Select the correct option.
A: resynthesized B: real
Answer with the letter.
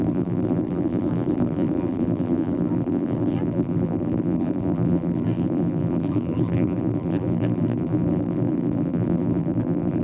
A